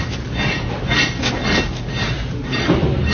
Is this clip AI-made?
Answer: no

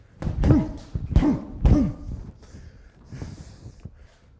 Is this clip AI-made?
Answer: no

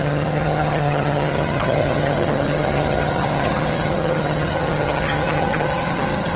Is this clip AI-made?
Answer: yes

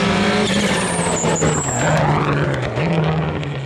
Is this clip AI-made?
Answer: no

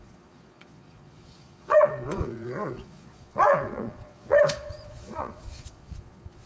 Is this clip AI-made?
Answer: yes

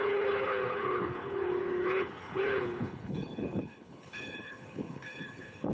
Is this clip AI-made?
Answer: yes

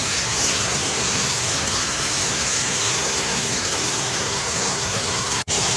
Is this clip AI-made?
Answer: yes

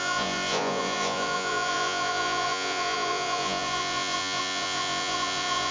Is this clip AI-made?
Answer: yes